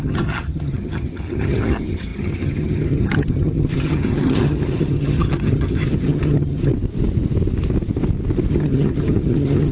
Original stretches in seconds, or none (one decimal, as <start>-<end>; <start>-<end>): 6.7-8.5